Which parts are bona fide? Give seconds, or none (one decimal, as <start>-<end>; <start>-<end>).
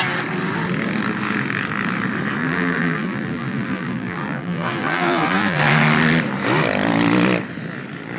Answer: 0.0-2.4; 5.6-8.2